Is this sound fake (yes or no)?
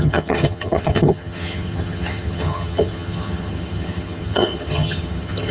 yes